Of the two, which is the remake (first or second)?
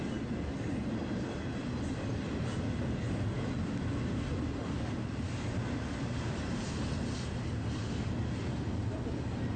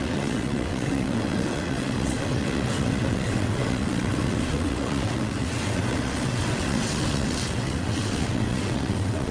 second